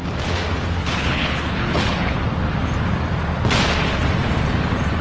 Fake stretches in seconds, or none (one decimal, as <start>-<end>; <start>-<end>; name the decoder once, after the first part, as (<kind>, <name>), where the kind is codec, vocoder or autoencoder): 0.8-2.2 (codec, HILCodec)